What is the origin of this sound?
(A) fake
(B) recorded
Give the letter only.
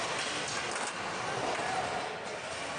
B